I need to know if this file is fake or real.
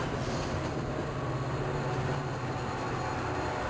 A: real